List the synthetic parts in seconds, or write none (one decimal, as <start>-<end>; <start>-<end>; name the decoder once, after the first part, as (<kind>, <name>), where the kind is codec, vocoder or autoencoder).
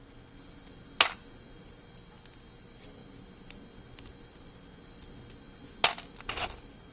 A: none